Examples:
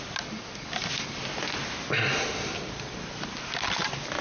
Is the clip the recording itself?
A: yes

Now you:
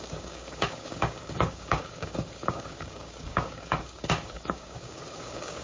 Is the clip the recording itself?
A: no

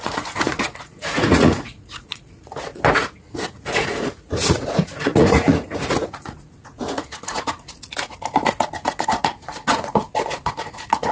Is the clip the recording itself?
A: no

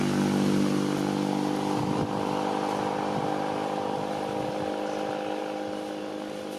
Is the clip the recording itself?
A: yes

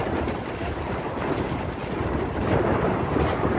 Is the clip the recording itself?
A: no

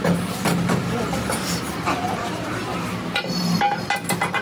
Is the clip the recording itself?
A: yes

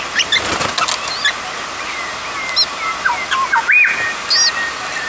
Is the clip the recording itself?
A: yes